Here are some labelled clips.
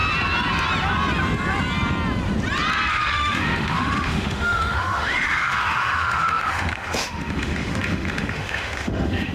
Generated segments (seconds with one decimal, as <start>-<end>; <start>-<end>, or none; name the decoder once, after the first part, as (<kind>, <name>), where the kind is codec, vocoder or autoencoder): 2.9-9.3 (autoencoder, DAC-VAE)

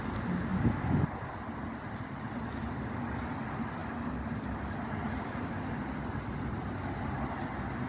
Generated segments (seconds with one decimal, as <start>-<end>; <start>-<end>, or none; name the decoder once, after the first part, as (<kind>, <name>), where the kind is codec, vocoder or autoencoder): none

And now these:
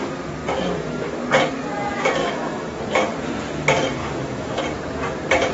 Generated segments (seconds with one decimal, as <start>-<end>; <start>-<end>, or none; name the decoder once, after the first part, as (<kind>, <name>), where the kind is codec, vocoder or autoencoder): 2.2-2.8 (autoencoder, DAC-VAE); 4.0-4.6

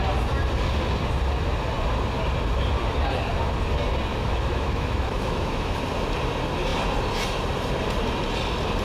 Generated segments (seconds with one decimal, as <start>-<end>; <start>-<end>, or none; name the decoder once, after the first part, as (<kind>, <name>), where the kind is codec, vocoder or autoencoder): 4.1-5.8 (autoencoder, DAC-VAE)